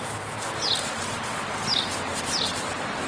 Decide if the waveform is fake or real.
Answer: real